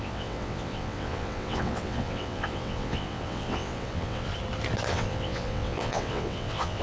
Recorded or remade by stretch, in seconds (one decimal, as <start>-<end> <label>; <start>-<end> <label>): 0.0-4.3 remade; 4.3-4.9 recorded; 4.9-6.8 remade